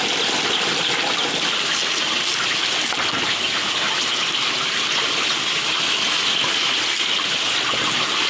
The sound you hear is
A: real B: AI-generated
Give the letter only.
A